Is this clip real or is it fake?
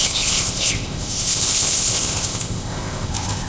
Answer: fake